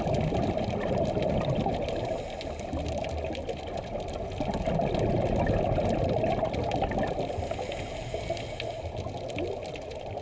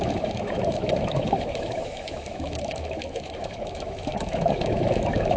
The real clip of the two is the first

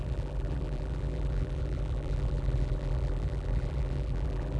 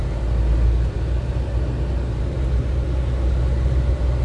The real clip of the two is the second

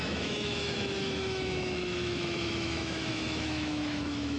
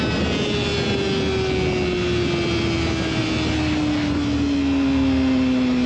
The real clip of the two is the second